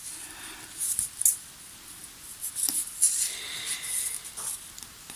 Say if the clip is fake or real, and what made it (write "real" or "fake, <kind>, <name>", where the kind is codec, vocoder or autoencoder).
real